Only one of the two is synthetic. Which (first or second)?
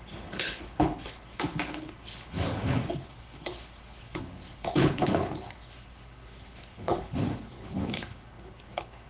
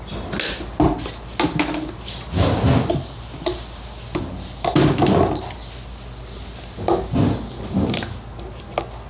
first